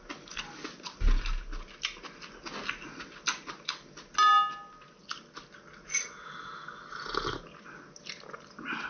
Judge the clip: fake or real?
real